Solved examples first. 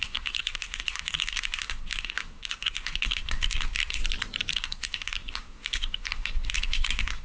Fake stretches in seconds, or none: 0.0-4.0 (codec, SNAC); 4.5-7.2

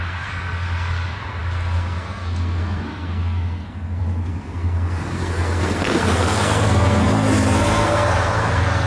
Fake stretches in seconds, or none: 0.0-8.9 (codec, SNAC)

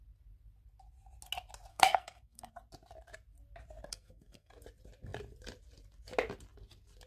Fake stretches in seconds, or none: 1.7-2.5 (codec, SNAC); 3.9-4.5

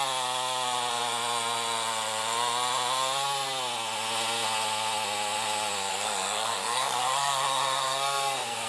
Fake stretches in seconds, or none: 5.9-8.7 (codec, SNAC)

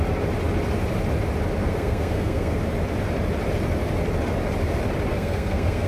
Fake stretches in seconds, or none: 1.6-2.6 (codec, SNAC); 5.1-5.9

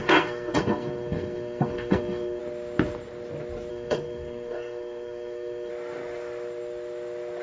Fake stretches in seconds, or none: 0.0-2.4 (codec, SNAC); 3.7-5.7

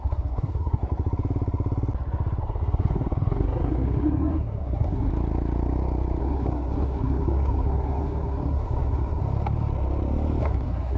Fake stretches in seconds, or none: 0.0-0.8 (codec, SNAC); 2.4-5.1; 6.2-9.2; 10.4-11.0

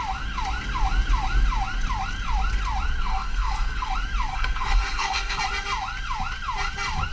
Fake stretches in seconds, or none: 3.0-3.9 (codec, SNAC); 4.3-5.4